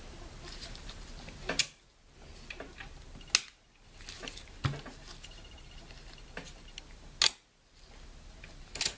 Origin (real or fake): real